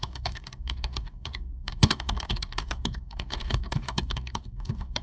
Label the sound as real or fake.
fake